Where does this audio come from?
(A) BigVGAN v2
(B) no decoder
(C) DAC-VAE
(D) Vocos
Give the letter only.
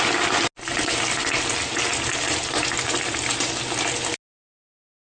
B